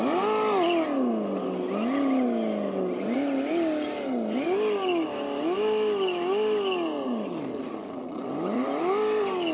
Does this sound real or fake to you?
real